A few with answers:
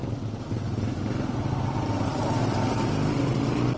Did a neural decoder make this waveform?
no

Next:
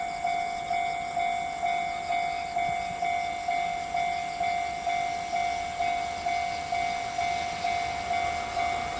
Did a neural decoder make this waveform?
no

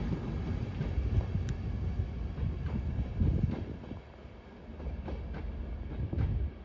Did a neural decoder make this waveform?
no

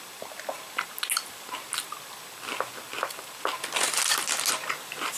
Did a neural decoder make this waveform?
no